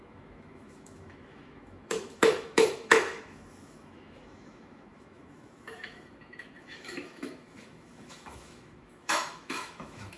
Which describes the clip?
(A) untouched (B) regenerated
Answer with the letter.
B